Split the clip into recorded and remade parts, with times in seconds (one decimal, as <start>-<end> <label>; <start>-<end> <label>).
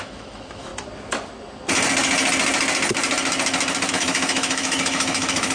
0.0-0.7 remade; 0.7-3.9 recorded; 3.9-5.5 remade